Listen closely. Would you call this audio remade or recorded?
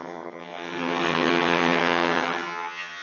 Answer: remade